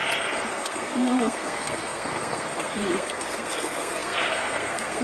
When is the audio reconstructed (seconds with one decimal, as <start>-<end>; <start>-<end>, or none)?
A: 0.5-5.0